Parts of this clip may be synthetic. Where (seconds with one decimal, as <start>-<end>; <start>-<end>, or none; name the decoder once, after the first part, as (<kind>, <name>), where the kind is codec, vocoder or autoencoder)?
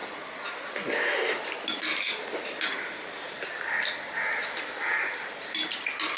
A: 4.4-6.2 (vocoder, BigVGAN v2)